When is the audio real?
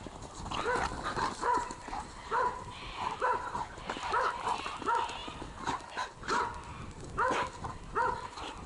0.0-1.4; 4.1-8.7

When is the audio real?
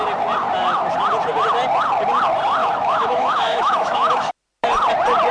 0.0-2.6; 4.3-5.3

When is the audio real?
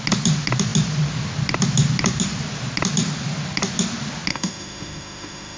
0.0-4.3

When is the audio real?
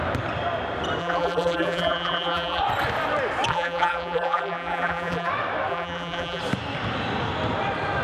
0.0-1.0; 2.6-3.5; 5.3-5.7; 6.4-8.0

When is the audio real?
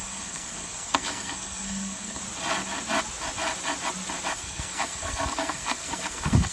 2.2-4.3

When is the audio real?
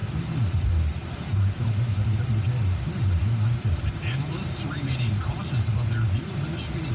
0.0-1.0; 2.3-3.2; 5.5-6.9